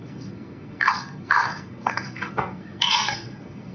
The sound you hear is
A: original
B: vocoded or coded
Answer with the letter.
B